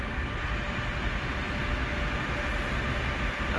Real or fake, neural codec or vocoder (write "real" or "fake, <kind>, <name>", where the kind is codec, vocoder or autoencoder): real